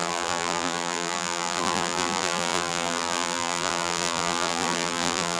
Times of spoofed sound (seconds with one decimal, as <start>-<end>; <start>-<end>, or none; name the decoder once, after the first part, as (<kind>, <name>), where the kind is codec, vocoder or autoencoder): 0.0-5.4 (vocoder, BigVGAN v2)

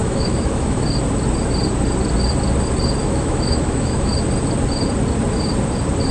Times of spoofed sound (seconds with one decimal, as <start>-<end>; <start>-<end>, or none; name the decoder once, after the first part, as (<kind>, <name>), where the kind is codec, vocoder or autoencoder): 0.0-0.8 (autoencoder, DAC-VAE); 3.0-4.1

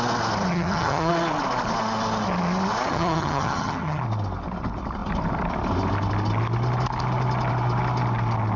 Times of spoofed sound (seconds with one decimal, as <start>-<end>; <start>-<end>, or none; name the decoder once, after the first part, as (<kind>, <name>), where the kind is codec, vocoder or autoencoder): 0.5-1.1 (vocoder, HiFi-GAN); 2.9-4.0

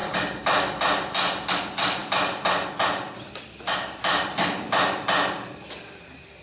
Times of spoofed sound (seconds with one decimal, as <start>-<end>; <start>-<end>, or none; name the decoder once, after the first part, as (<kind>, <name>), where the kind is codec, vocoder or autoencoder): none